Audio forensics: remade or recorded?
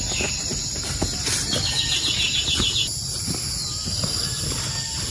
recorded